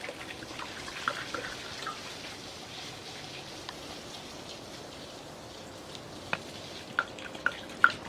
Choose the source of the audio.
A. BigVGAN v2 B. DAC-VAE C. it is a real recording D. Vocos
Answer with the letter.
C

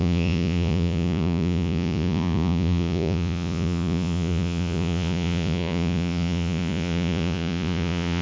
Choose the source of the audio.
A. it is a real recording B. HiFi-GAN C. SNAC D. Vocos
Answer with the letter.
D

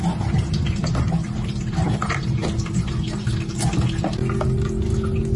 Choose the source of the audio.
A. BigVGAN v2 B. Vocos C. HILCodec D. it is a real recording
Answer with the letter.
D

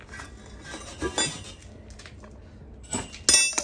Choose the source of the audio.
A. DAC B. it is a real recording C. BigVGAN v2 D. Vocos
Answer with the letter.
B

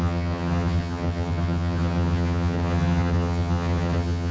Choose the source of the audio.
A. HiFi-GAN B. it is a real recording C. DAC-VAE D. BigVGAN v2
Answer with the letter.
A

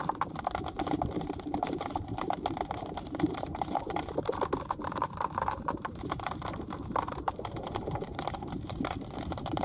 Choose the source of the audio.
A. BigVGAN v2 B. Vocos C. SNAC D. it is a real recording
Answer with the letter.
A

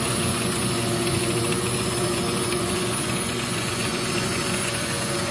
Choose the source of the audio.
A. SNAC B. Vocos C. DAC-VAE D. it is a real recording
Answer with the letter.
B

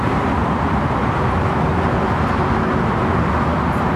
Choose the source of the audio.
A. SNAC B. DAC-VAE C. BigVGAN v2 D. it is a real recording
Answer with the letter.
D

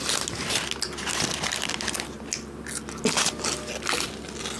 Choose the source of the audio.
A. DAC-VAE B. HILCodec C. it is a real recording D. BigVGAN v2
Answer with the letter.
C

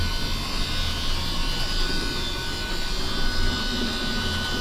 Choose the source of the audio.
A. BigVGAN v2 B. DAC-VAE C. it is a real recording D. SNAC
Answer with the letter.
C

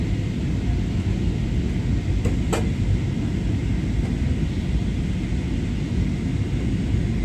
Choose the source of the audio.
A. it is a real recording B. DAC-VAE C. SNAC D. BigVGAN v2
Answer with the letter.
A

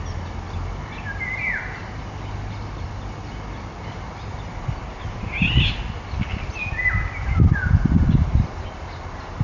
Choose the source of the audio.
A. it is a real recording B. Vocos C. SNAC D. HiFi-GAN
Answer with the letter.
A